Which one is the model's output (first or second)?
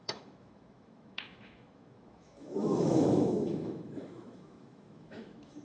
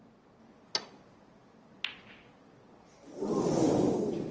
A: first